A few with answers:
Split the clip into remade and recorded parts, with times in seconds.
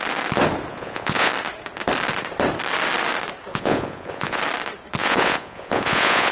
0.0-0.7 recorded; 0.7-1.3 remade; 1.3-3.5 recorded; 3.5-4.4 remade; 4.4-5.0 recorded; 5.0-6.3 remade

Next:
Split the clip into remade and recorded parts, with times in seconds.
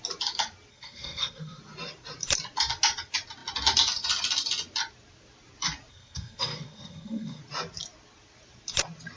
0.0-0.7 recorded; 0.7-1.6 remade; 1.6-5.9 recorded; 5.9-7.4 remade; 7.4-9.2 recorded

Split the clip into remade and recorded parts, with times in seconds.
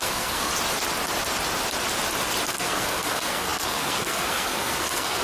0.0-0.5 remade; 0.5-2.5 recorded; 2.5-5.2 remade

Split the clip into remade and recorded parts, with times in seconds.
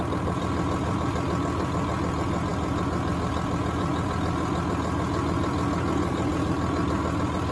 0.0-7.5 recorded